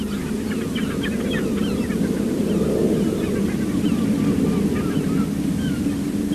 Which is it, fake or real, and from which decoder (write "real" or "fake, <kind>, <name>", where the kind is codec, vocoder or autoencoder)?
real